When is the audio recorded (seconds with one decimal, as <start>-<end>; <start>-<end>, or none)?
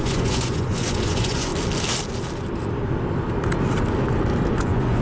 1.5-4.5